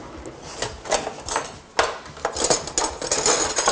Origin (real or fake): real